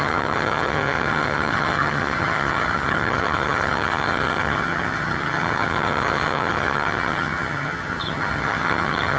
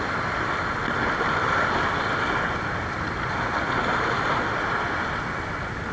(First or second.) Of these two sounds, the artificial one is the first